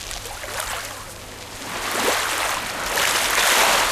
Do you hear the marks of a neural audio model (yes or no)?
no